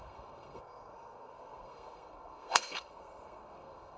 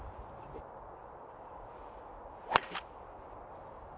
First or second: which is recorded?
second